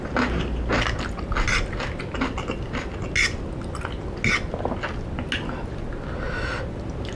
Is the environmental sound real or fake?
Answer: real